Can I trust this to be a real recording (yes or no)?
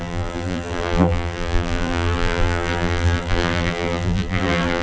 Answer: no